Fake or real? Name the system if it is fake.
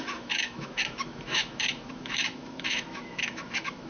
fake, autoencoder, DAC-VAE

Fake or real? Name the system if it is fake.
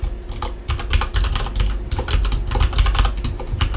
real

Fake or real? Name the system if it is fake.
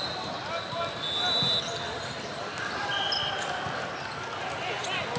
real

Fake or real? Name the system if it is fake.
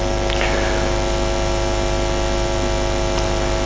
real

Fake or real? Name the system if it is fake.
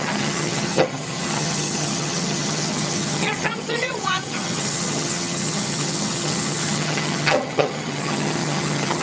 fake, vocoder, HiFi-GAN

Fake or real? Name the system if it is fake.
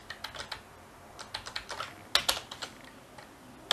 real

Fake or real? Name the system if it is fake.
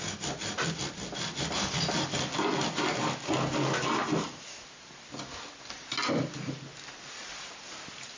real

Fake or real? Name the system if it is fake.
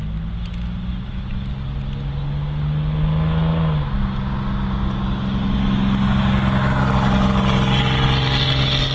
real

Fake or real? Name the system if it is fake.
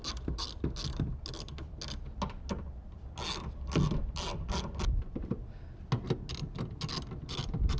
real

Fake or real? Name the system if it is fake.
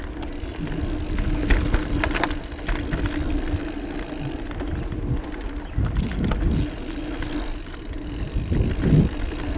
real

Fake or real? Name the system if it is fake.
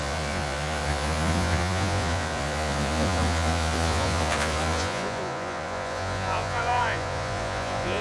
fake, vocoder, Vocos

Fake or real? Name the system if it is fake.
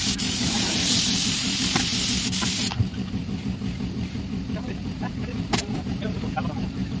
fake, vocoder, BigVGAN v2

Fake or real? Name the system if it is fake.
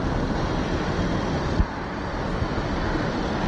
real